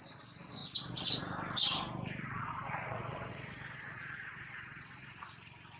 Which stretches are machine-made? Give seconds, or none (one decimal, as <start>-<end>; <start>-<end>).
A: 2.2-5.1